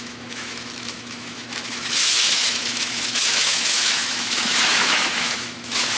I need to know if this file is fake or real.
fake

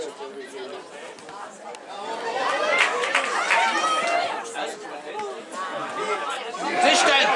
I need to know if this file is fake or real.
real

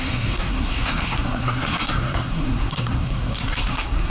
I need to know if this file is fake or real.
fake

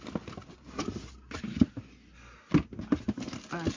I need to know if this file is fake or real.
real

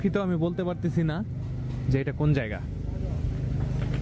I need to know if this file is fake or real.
real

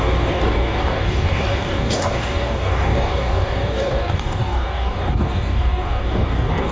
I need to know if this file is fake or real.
fake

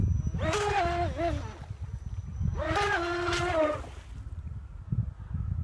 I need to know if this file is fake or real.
real